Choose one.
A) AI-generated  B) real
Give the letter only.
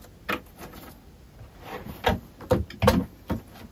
B